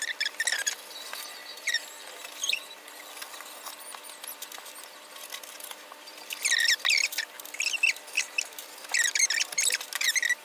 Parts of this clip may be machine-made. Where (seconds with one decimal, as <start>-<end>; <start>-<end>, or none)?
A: 1.4-2.9